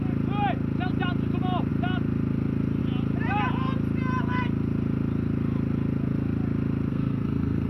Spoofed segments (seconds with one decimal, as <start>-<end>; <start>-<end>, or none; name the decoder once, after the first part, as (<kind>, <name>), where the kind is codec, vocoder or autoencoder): 6.9-7.7 (codec, SNAC)